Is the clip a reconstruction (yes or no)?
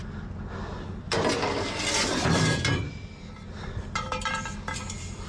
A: no